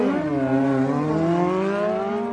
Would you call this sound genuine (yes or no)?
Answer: yes